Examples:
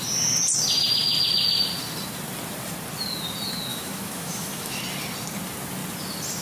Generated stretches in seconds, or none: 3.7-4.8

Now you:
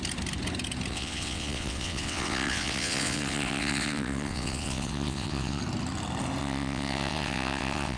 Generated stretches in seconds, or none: 0.9-5.6; 6.4-8.0

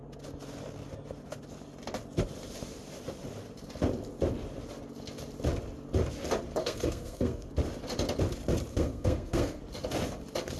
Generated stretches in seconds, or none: 6.6-7.5; 8.7-9.6

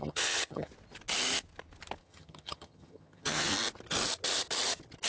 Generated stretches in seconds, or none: 0.0-0.7; 2.0-3.5

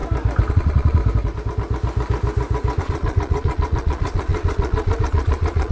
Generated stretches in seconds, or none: 0.5-1.0; 2.8-5.7

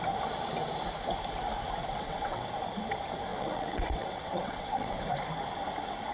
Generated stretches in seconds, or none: 1.9-2.5; 3.3-5.0